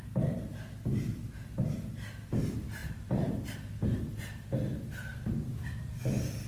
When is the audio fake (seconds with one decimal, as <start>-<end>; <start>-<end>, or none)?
2.8-3.4; 5.1-6.1